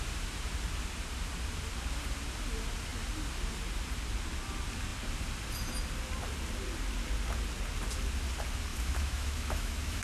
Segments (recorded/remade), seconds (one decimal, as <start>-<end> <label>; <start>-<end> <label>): 0.0-8.7 recorded; 8.7-10.0 remade